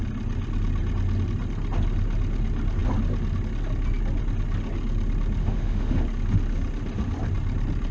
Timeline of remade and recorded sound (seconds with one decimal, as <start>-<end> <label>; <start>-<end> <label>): 0.0-5.4 recorded; 5.4-6.0 remade; 6.0-7.9 recorded

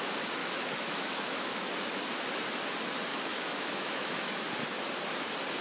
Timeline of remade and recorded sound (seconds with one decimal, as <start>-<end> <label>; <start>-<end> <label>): 0.0-0.4 recorded; 0.4-2.0 remade; 2.0-3.1 recorded; 3.1-4.4 remade; 4.4-5.6 recorded

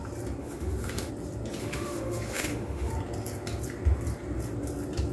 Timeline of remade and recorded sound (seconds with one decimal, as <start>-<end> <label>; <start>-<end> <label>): 0.0-0.4 recorded; 0.4-1.1 remade; 1.1-1.6 recorded; 1.6-2.9 remade; 2.9-5.1 recorded

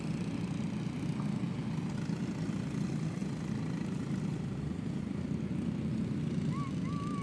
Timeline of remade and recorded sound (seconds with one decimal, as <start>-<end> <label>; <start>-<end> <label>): 0.0-7.2 recorded